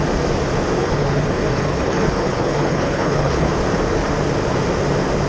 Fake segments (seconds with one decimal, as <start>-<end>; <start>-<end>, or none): 0.8-3.5